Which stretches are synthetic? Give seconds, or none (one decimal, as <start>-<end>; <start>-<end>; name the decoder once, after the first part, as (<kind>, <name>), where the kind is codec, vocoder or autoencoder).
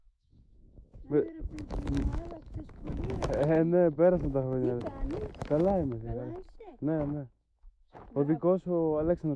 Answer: 0.0-4.8 (autoencoder, DAC-VAE); 5.4-9.4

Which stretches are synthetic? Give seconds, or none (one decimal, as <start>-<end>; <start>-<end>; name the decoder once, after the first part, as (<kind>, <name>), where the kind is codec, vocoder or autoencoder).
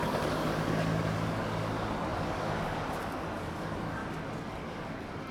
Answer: 0.0-4.0 (codec, DAC); 4.5-5.3